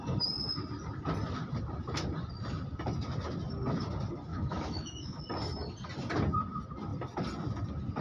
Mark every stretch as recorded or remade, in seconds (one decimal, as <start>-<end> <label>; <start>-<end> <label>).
0.0-4.3 recorded; 4.3-5.2 remade; 5.2-8.0 recorded

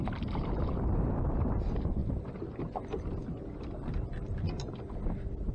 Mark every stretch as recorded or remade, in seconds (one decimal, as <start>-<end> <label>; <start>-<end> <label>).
0.0-5.5 recorded